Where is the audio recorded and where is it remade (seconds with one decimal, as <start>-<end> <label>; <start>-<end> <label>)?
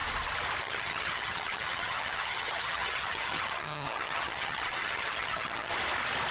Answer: 0.0-0.6 recorded; 0.6-5.7 remade; 5.7-6.3 recorded